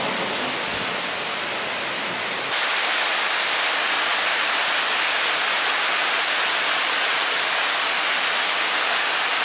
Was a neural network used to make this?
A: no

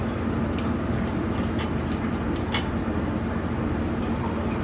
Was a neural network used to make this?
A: no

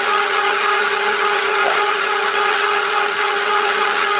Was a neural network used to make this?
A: yes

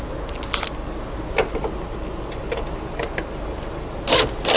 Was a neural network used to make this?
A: no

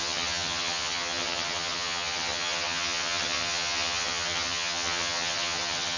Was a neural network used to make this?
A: yes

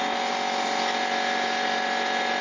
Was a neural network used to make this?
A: no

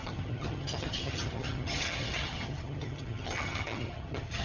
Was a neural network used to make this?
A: yes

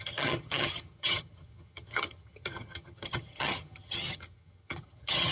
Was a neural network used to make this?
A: yes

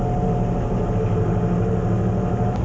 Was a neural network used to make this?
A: no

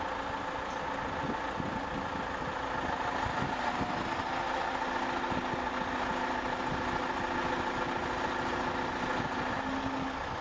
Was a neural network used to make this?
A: no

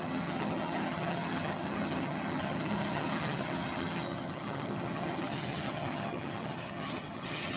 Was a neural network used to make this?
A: yes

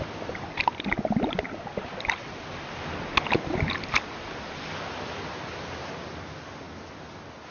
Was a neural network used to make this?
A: no